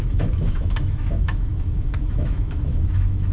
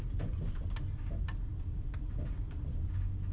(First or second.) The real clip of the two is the second